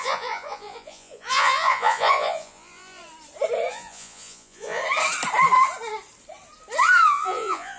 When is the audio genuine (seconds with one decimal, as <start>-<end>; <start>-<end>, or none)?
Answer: 3.0-3.7; 4.8-7.1

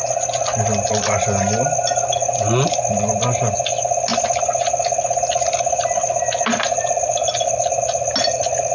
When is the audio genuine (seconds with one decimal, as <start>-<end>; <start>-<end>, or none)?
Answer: 0.0-8.7

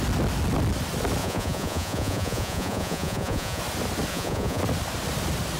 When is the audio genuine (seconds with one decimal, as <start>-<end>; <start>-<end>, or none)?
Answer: 0.0-1.2; 3.6-4.1; 4.6-5.6

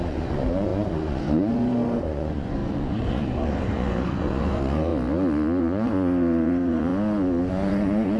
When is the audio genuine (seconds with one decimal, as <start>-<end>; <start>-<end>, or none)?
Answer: 4.9-5.6; 6.9-7.5

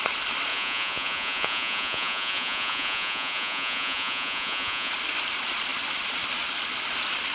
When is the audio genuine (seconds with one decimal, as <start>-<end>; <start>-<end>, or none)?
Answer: 0.0-0.5; 4.9-7.3